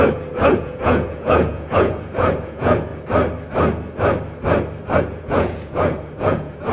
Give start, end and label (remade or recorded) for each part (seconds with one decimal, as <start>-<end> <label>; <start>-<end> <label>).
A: 0.0-2.9 remade; 2.9-5.0 recorded; 5.0-6.7 remade